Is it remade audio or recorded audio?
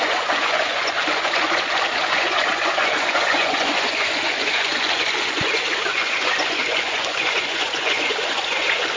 remade